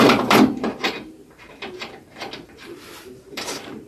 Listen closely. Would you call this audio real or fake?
fake